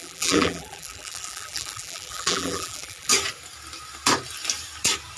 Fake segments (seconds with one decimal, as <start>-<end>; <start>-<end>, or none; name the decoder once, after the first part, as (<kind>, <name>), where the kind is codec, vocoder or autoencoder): 0.0-3.1 (vocoder, BigVGAN v2)